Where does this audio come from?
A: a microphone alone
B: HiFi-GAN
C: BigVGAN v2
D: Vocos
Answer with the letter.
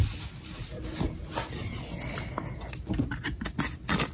A